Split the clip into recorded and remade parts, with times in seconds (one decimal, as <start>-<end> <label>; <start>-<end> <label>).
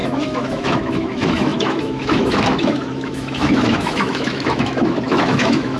0.0-5.8 remade